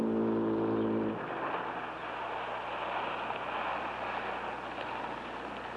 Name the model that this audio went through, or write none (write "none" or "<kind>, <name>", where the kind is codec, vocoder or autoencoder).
none